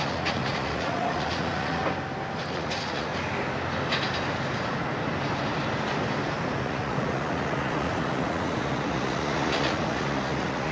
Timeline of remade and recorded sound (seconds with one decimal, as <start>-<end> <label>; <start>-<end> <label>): 0.0-1.8 remade; 1.8-2.5 recorded; 2.5-3.1 remade; 3.1-6.6 recorded; 6.6-10.7 remade